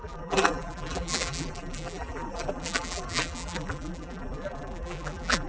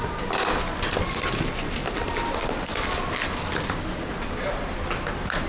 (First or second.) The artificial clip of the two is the first